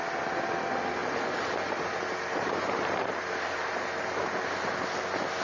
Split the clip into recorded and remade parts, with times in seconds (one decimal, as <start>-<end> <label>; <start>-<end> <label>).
0.0-1.0 recorded; 1.0-4.2 remade; 4.2-5.4 recorded